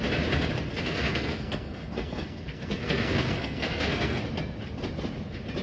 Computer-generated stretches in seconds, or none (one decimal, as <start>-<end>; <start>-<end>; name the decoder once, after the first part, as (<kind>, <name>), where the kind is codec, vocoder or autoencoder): 0.8-4.2 (codec, SNAC)